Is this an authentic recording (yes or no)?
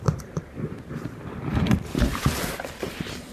no